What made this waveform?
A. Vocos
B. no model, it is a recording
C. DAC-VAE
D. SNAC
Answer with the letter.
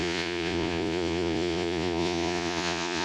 A